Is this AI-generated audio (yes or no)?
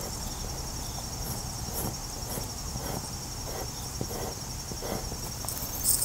no